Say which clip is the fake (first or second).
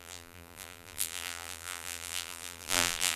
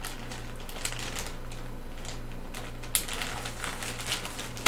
first